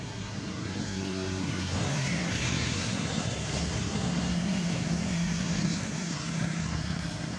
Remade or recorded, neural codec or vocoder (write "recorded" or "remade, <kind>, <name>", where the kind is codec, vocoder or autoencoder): remade, codec, SNAC